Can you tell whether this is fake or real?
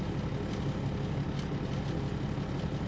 real